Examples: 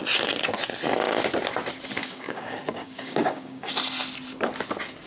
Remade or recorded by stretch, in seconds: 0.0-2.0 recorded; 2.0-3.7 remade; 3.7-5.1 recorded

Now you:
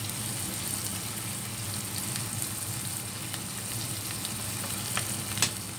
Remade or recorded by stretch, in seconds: 0.0-5.8 recorded

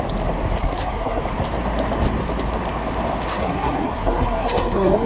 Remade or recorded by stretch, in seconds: 0.0-0.6 recorded; 0.6-1.2 remade; 1.2-3.3 recorded; 3.3-5.1 remade

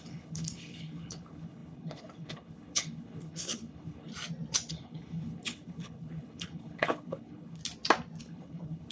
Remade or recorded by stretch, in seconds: 0.0-4.1 remade; 4.1-4.7 recorded; 4.7-7.6 remade; 7.6-8.2 recorded; 8.2-8.9 remade

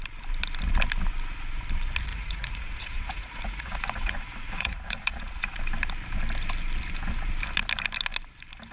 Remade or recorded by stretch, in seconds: 0.0-2.1 recorded; 2.1-5.6 remade; 5.6-8.7 recorded